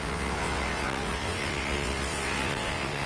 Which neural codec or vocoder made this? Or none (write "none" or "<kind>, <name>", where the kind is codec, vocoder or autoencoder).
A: vocoder, WaveNeXt